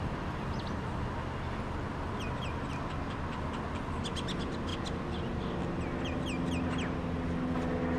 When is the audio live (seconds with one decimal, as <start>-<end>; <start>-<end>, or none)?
0.0-8.0